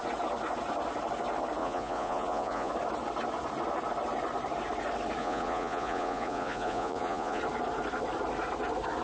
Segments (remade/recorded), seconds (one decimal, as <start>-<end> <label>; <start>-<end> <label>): 0.0-1.6 recorded; 1.6-2.7 remade; 2.7-5.2 recorded; 5.2-7.4 remade; 7.4-9.0 recorded